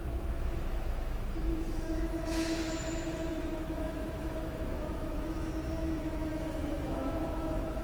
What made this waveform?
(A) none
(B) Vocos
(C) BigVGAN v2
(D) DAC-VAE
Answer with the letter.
D